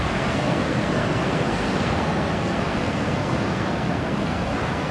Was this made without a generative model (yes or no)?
no